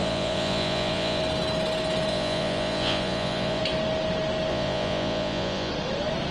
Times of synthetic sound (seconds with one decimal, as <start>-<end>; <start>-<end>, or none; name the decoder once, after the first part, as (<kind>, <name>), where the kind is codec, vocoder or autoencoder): 0.0-1.2 (vocoder, Vocos); 2.1-3.6; 4.5-5.7